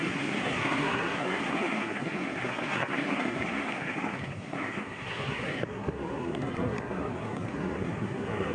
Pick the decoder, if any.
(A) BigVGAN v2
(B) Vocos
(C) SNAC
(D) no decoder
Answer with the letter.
C